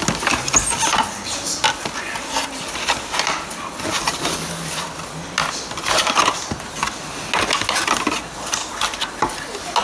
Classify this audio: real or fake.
real